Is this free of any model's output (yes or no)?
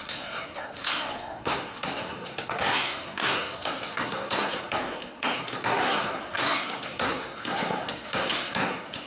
no